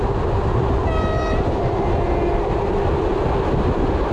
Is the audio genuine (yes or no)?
yes